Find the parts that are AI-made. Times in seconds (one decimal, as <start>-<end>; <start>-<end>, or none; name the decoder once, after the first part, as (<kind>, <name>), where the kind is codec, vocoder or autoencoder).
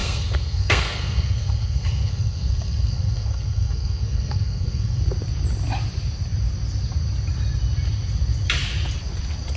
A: 0.0-5.0 (codec, SNAC)